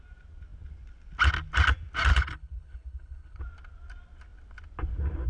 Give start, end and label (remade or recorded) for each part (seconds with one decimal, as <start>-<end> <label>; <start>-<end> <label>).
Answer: 0.0-2.1 recorded; 2.1-3.4 remade; 3.4-5.3 recorded